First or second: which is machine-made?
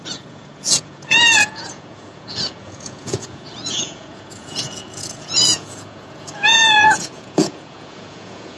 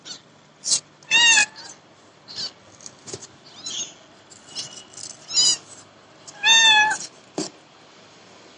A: first